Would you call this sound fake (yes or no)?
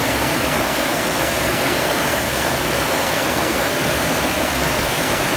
yes